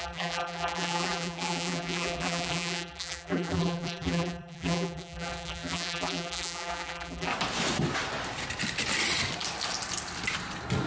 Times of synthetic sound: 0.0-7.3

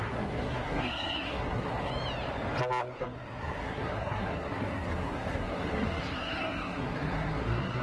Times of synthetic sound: 0.0-1.9; 2.8-7.8

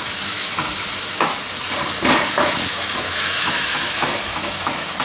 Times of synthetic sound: 0.0-1.3; 2.3-5.0

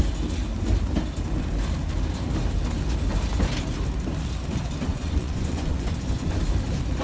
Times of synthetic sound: 4.9-6.4

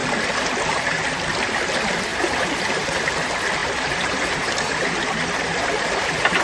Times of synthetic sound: 2.1-3.0; 3.6-4.5; 5.5-6.4

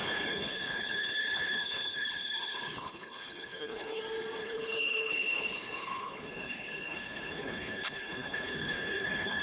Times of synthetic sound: 0.0-4.0; 4.4-9.4

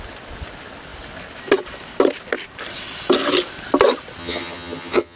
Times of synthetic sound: 4.2-5.2